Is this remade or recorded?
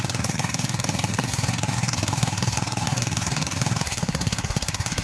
remade